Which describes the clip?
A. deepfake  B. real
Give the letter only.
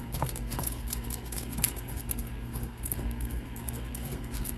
A